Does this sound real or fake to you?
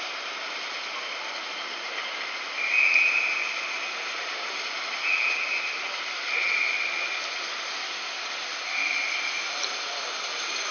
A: real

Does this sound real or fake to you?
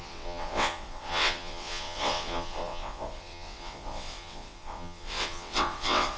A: fake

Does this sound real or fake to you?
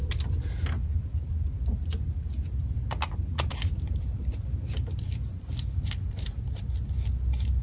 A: real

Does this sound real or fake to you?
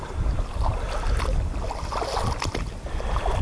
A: real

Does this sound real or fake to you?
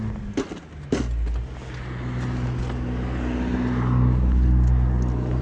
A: real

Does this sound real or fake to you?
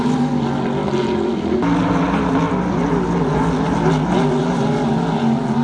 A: real